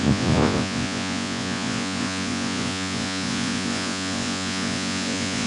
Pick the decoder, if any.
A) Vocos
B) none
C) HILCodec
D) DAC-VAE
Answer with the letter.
A